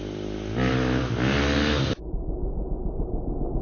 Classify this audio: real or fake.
real